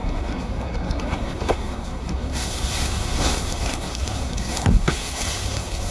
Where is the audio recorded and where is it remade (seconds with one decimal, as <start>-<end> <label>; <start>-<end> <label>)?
0.0-5.9 remade